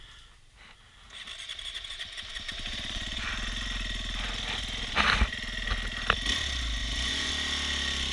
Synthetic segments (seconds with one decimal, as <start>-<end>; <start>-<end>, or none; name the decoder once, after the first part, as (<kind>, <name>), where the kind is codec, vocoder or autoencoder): 2.7-3.3 (vocoder, Vocos); 6.8-7.3